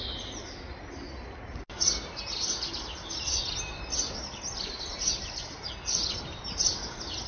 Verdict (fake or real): real